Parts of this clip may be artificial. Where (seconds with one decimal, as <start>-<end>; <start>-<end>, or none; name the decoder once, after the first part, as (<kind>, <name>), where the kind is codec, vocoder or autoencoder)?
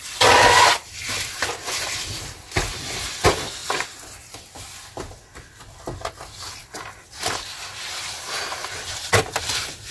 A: none